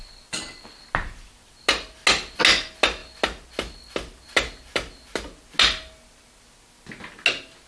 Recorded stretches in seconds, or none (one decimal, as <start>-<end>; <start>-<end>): 0.0-7.7